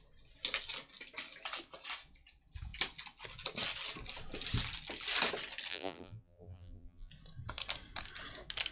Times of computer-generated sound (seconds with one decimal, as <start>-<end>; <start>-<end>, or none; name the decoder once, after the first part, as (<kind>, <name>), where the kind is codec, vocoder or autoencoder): 5.7-7.1 (vocoder, BigVGAN v2)